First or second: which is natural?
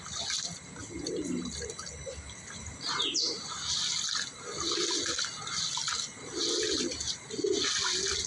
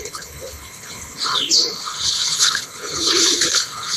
first